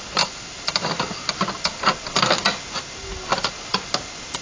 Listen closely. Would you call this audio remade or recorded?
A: recorded